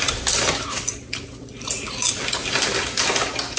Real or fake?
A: real